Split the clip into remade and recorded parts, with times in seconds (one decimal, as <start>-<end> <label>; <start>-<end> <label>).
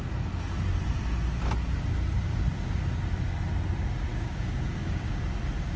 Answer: 0.0-4.1 recorded; 4.1-5.2 remade; 5.2-5.8 recorded